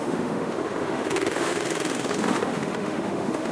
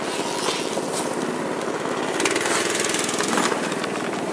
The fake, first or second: first